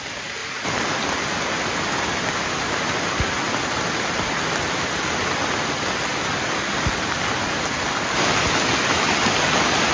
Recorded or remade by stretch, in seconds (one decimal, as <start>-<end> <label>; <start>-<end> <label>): 0.0-9.9 recorded